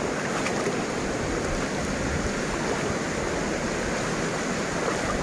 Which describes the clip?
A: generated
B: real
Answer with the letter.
B